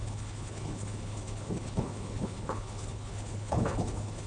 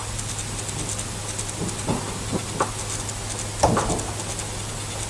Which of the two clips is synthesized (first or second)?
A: first